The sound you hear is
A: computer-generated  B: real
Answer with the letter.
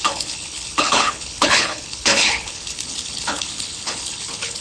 A